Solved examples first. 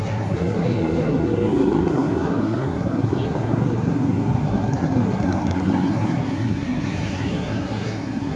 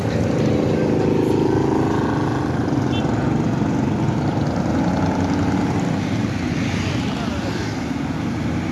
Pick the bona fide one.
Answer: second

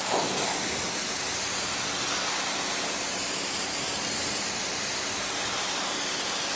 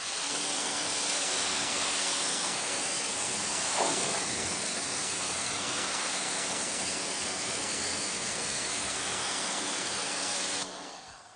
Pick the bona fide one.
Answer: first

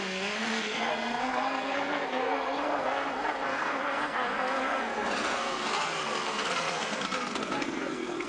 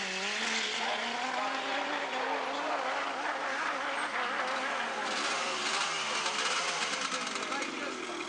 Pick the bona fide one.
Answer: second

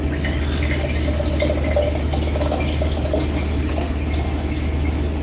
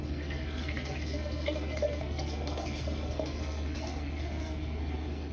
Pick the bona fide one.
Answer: first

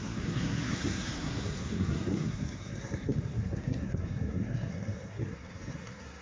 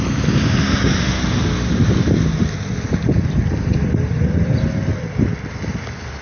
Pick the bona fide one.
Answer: second